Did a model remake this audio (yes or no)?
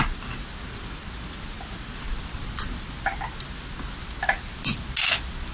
no